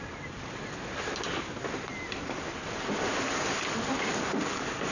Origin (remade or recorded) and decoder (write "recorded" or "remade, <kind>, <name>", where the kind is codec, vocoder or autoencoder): recorded